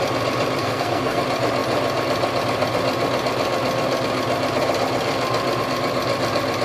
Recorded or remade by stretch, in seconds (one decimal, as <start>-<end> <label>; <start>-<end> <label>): 0.0-0.6 recorded; 0.6-1.2 remade; 1.2-6.6 recorded